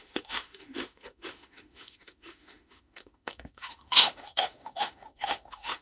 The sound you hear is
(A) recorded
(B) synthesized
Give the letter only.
B